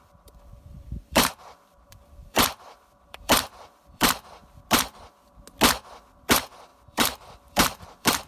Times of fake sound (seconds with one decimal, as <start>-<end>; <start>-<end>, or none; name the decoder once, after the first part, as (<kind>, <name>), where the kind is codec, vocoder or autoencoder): 0.0-4.4 (vocoder, BigVGAN v2); 6.3-8.3